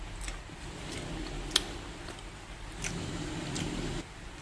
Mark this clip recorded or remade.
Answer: recorded